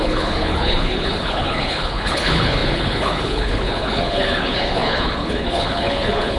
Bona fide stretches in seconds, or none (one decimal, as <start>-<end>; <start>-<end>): none